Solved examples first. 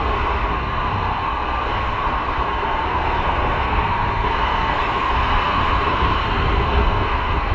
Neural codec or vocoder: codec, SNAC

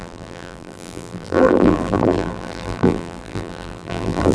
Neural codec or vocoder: vocoder, BigVGAN v2